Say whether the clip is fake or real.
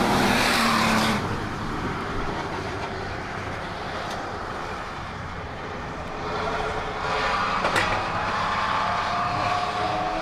fake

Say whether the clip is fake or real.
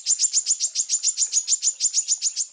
real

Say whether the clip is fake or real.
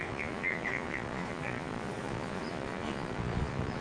fake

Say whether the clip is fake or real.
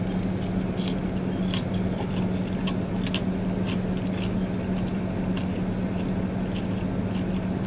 real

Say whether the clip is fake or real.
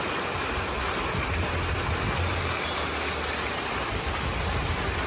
real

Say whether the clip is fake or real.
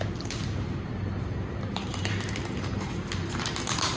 fake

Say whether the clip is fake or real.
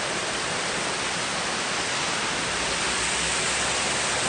real